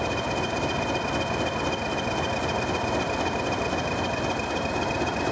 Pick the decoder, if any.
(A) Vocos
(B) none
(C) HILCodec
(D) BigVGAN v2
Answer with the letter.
B